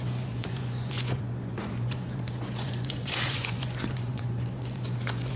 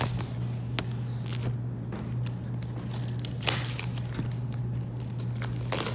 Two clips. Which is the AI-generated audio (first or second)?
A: first